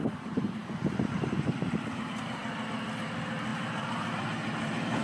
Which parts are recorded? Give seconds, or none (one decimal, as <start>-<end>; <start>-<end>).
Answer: 2.4-3.1